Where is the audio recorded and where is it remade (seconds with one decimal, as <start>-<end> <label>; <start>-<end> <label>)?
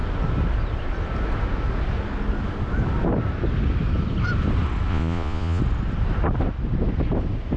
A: 0.0-4.9 recorded; 4.9-5.6 remade; 5.6-7.6 recorded